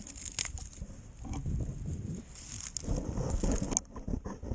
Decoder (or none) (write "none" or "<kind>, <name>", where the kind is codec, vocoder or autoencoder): none